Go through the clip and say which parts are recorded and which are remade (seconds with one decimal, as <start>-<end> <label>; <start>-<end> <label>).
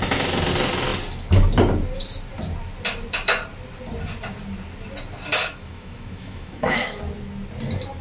0.0-5.4 recorded; 5.4-7.0 remade; 7.0-8.0 recorded